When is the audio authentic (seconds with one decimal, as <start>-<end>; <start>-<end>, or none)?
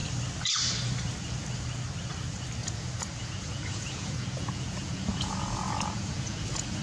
0.0-2.6